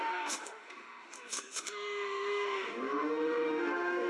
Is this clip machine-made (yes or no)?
yes